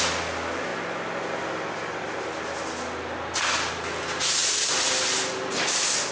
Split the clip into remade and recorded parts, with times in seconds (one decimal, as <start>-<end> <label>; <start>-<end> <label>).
0.0-6.1 recorded

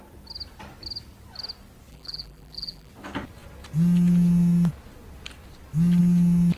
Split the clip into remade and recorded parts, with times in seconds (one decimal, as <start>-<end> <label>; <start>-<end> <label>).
0.0-1.9 recorded; 1.9-2.9 remade; 2.9-6.6 recorded

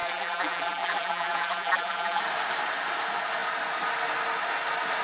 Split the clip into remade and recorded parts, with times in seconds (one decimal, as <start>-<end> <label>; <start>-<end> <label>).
0.0-2.2 remade; 2.2-5.0 recorded